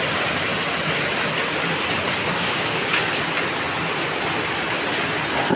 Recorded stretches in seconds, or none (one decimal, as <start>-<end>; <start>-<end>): 0.0-2.2; 3.0-5.6